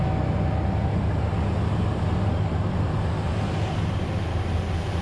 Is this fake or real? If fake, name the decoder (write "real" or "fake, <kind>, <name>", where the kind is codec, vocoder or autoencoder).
real